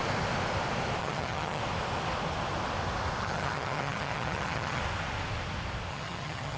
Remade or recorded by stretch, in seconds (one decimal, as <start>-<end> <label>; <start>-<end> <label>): 0.0-1.0 recorded; 1.0-1.6 remade; 1.6-3.2 recorded; 3.2-4.8 remade; 4.8-5.9 recorded; 5.9-6.6 remade